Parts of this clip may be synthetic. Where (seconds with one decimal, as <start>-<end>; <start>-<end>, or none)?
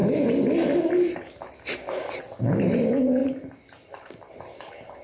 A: none